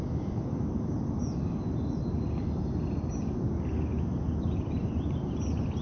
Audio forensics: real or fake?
real